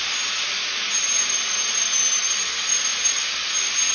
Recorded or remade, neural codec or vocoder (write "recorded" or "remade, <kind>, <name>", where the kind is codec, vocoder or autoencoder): recorded